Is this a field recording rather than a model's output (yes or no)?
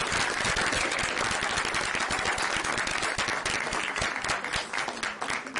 yes